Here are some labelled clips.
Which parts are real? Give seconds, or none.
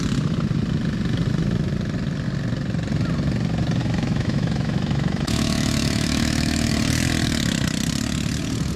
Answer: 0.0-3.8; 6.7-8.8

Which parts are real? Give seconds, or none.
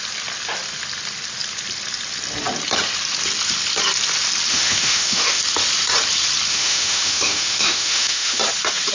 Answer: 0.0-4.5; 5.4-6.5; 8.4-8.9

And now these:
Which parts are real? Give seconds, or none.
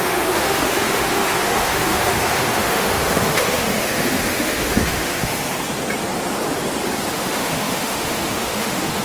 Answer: 5.4-7.1